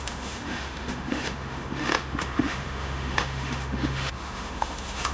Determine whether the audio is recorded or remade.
remade